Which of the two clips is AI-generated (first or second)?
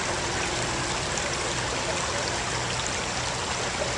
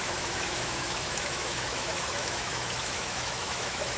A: second